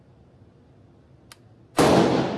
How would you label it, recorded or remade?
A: recorded